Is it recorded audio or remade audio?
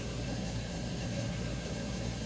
remade